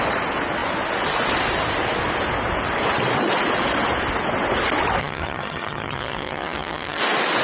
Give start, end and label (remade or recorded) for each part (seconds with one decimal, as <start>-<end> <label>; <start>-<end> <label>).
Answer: 0.0-5.0 recorded; 5.0-7.0 remade; 7.0-7.4 recorded